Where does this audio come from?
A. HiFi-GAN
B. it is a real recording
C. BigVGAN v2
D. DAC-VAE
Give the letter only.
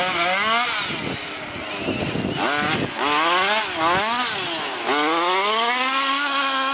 B